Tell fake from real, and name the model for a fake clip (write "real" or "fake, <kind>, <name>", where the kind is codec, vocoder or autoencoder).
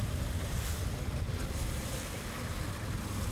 real